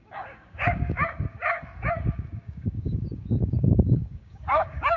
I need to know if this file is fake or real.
fake